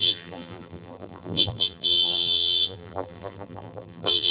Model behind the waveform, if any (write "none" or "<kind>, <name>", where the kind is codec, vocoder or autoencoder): vocoder, BigVGAN v2